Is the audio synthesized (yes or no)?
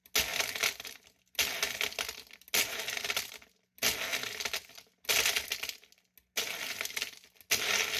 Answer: no